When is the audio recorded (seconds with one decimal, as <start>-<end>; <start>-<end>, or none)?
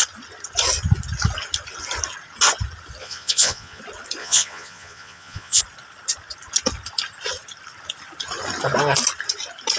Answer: 0.0-3.0; 3.8-4.2; 5.6-9.8